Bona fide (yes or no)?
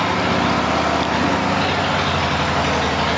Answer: yes